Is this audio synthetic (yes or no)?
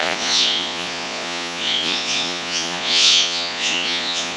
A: yes